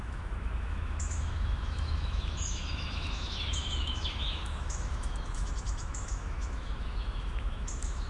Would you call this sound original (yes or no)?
no